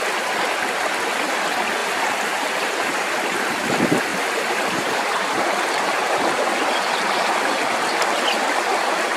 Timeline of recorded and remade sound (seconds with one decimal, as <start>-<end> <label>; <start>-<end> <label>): 0.0-1.8 recorded; 1.8-3.5 remade; 3.5-4.1 recorded; 4.1-7.3 remade; 7.3-9.2 recorded